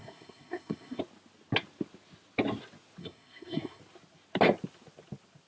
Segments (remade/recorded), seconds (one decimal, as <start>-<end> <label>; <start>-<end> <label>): 0.0-1.0 remade; 1.0-3.0 recorded; 3.0-3.8 remade; 3.8-5.5 recorded